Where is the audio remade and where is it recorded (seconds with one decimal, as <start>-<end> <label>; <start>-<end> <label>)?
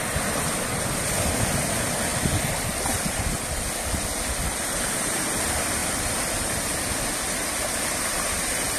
0.0-2.1 recorded; 2.1-4.9 remade; 4.9-8.8 recorded